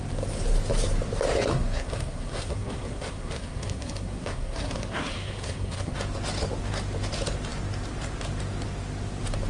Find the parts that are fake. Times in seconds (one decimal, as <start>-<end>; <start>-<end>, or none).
1.5-5.9